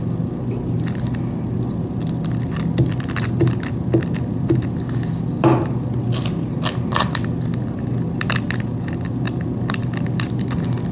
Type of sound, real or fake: real